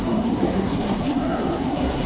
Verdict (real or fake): fake